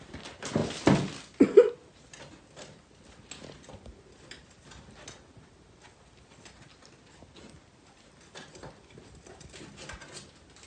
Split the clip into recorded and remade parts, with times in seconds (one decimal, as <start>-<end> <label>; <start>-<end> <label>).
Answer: 0.0-10.7 recorded